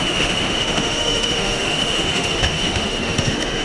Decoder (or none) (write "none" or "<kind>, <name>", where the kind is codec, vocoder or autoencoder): autoencoder, DAC-VAE